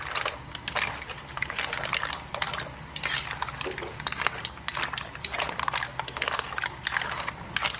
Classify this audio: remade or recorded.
recorded